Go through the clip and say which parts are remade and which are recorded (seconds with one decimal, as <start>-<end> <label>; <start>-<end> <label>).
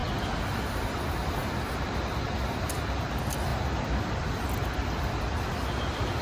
0.0-3.5 recorded; 3.5-6.2 remade